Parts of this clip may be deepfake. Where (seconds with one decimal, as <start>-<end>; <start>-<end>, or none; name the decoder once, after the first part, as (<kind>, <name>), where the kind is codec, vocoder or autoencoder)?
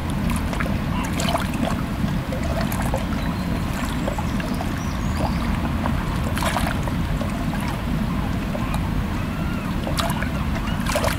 1.2-11.2 (vocoder, BigVGAN v2)